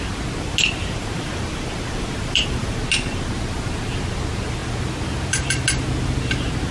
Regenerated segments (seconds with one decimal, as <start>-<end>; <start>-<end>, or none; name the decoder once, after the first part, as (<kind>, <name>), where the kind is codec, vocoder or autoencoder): 0.8-2.8 (vocoder, BigVGAN v2)